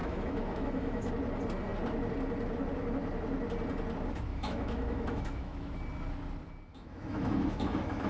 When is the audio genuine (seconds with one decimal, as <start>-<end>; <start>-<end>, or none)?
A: 1.1-4.3; 5.7-6.7